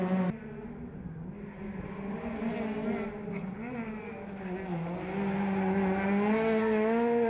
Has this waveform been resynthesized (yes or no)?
no